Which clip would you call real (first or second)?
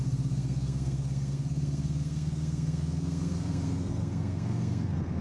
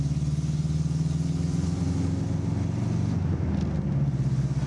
second